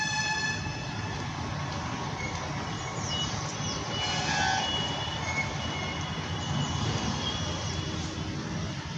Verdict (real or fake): real